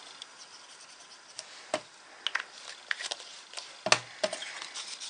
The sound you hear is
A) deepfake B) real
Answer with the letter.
B